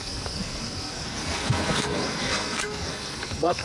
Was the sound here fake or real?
fake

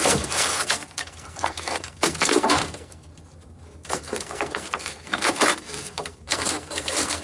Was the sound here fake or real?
fake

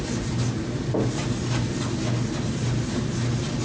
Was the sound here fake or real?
real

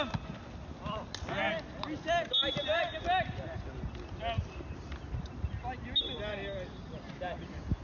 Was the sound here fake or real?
real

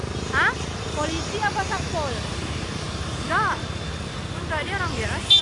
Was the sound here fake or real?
real